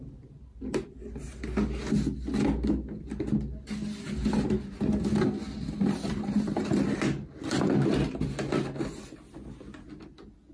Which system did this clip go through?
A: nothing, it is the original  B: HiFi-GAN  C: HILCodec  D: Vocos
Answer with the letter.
A